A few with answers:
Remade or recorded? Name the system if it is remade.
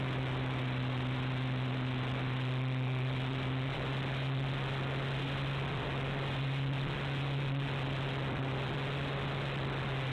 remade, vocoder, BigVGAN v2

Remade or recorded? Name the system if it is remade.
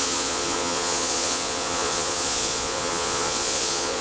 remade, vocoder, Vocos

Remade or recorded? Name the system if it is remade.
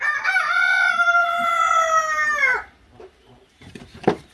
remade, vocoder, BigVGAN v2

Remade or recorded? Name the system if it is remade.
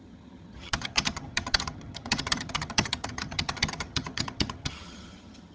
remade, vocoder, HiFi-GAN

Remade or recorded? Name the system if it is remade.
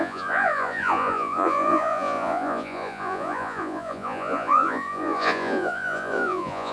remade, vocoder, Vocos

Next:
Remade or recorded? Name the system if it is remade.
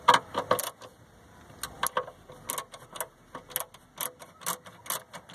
recorded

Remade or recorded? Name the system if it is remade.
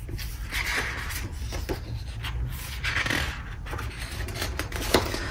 recorded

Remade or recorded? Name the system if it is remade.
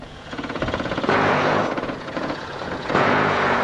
remade, vocoder, Vocos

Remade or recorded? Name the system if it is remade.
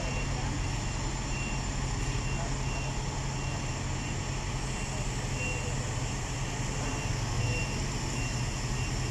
recorded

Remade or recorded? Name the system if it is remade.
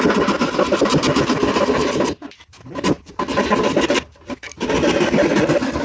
recorded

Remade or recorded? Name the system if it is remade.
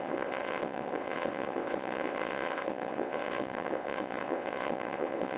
remade, vocoder, WaveNeXt